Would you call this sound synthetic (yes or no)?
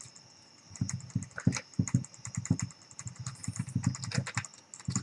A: no